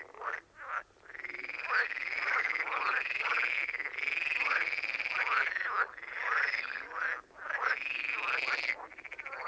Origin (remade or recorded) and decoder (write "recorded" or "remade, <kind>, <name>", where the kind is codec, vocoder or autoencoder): recorded